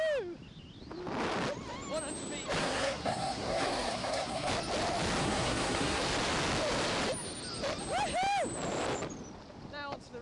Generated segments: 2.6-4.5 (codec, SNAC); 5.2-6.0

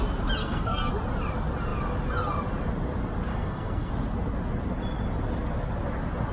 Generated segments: 0.4-0.9 (codec, SNAC); 3.3-3.9